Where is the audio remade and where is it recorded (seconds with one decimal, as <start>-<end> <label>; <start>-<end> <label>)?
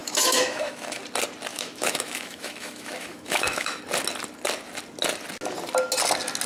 0.0-1.0 remade; 1.0-1.5 recorded; 1.5-3.8 remade; 3.8-6.5 recorded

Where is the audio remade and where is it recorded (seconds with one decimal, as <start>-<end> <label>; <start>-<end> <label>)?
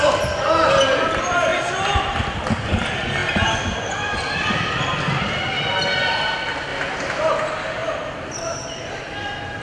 0.0-6.7 recorded; 6.7-7.3 remade; 7.3-7.8 recorded; 7.8-9.0 remade; 9.0-9.6 recorded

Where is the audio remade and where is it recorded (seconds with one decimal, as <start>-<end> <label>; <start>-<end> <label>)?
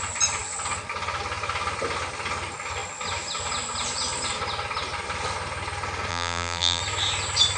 0.0-6.1 recorded; 6.1-6.8 remade; 6.8-7.6 recorded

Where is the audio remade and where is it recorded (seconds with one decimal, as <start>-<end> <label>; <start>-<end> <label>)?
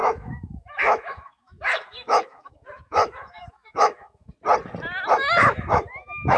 0.0-4.3 remade; 4.3-5.1 recorded; 5.1-6.4 remade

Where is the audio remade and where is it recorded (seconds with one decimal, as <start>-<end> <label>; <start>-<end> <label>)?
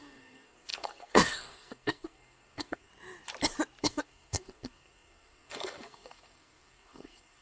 0.0-2.9 remade; 2.9-3.8 recorded; 3.8-7.4 remade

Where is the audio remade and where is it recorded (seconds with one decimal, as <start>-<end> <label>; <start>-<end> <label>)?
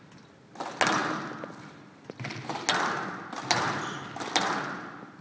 0.0-5.2 recorded